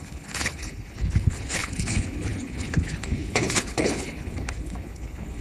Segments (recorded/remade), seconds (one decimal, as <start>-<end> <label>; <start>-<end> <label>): 0.0-5.4 remade